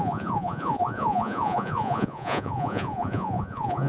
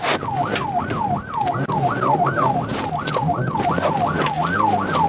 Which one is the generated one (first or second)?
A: first